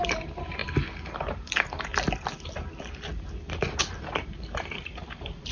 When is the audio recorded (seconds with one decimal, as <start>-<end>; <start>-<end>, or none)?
0.6-1.2; 1.9-3.8